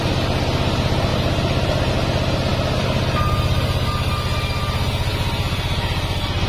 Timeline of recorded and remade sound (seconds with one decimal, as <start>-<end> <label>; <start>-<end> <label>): 0.0-6.5 recorded